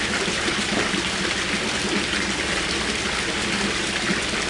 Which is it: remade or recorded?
recorded